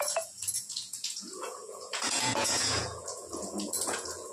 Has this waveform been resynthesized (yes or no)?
yes